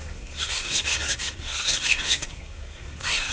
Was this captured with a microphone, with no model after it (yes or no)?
no